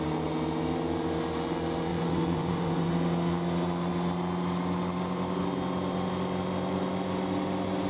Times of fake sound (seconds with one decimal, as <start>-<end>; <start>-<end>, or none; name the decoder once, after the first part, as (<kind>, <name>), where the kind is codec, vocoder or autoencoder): 1.9-2.9 (vocoder, Vocos)